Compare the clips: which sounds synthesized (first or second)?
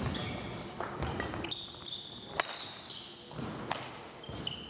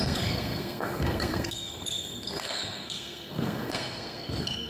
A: second